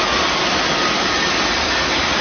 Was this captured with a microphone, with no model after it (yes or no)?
yes